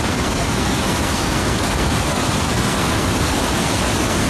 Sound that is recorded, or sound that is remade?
remade